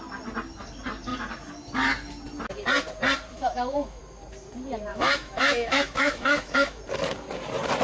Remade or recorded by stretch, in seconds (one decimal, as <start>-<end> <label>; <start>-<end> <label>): 0.0-3.3 recorded; 3.3-4.0 remade; 4.0-4.9 recorded; 4.9-6.8 remade; 6.8-7.8 recorded